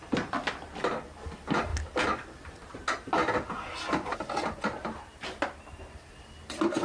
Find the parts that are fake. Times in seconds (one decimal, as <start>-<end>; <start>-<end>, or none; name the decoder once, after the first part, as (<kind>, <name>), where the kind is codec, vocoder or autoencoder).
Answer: 0.0-1.7 (vocoder, BigVGAN v2); 2.4-2.8; 5.7-6.8